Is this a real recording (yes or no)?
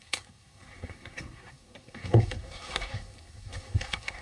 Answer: no